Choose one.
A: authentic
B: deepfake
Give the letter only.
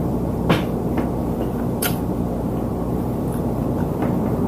B